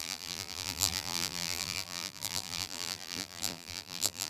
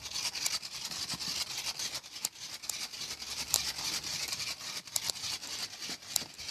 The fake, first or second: first